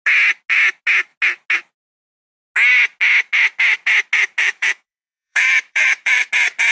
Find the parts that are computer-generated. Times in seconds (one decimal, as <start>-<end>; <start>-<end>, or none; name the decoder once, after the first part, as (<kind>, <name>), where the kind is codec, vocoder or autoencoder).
4.4-6.3 (autoencoder, DAC-VAE)